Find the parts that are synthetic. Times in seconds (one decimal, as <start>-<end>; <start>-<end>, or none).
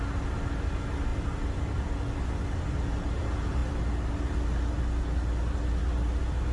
none